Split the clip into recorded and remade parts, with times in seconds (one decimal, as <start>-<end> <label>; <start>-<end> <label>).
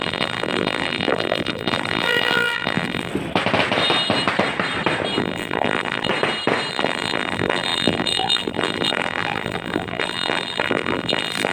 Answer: 0.0-3.1 remade; 3.1-5.2 recorded; 5.2-6.1 remade; 6.1-6.7 recorded; 6.7-11.5 remade